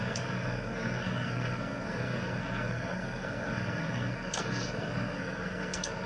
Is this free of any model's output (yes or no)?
no